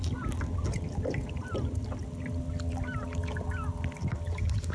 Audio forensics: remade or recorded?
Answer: recorded